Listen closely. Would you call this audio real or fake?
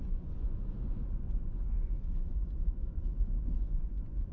fake